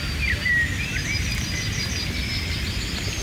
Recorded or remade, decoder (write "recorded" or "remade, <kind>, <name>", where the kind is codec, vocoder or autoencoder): recorded